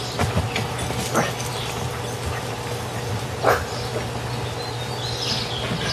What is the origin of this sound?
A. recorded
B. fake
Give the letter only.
A